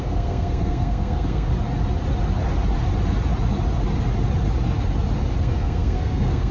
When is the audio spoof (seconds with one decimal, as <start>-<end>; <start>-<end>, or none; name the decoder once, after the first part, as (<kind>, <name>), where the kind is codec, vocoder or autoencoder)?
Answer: 0.0-1.5 (codec, SNAC); 5.4-6.5